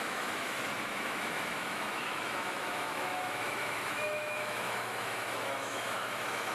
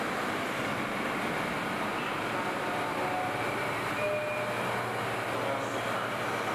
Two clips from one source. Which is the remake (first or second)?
first